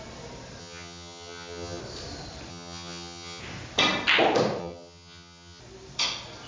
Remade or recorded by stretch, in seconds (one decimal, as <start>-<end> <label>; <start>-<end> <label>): 0.0-0.6 recorded; 0.6-1.8 remade; 1.8-2.5 recorded; 2.5-3.4 remade; 3.4-4.6 recorded; 4.6-5.6 remade; 5.6-6.5 recorded